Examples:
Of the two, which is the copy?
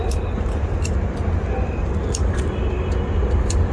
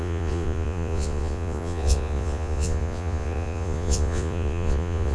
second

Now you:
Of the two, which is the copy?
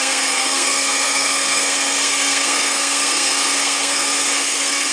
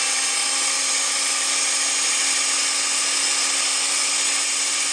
first